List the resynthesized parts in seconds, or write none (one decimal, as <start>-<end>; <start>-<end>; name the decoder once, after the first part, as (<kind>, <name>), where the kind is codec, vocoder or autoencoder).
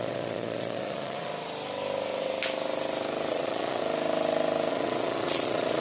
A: 0.0-1.3 (vocoder, Vocos); 3.3-3.8; 4.7-5.8